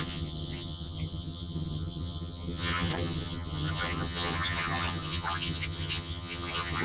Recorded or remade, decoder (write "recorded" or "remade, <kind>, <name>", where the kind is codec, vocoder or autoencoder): remade, vocoder, HiFi-GAN